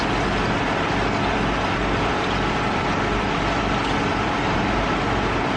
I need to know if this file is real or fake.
real